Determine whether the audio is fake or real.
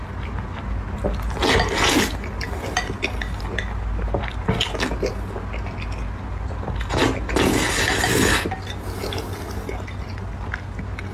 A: real